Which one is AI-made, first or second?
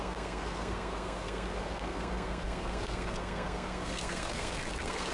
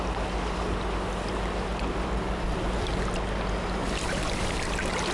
first